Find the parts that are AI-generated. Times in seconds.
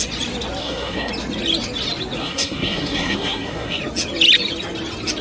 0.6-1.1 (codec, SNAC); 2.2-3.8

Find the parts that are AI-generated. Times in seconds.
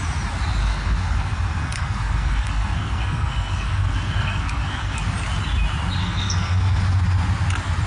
0.6-5.0 (codec, SNAC); 6.0-6.8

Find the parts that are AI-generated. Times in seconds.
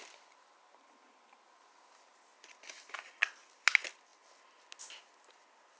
none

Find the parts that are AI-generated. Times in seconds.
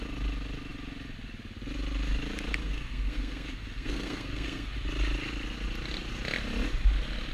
2.6-4.7 (codec, SNAC)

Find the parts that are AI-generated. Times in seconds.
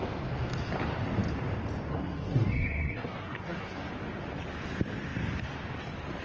1.9-3.9 (codec, SNAC)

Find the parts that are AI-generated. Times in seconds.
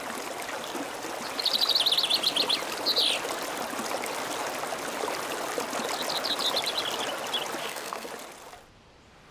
7.6-8.1 (codec, SNAC)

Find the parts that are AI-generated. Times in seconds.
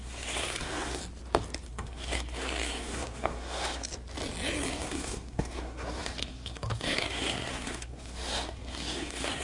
0.0-1.0 (codec, SNAC); 1.7-3.9; 4.7-9.4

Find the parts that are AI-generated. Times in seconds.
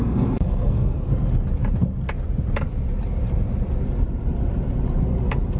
0.0-1.1 (codec, SNAC)